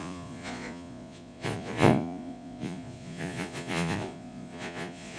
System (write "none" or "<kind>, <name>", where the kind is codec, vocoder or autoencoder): vocoder, Vocos